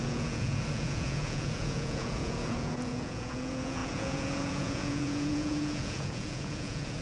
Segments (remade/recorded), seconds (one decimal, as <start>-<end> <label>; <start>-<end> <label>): 0.0-7.0 remade